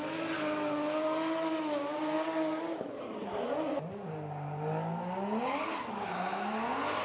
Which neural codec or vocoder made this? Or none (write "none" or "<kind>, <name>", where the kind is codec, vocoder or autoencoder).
none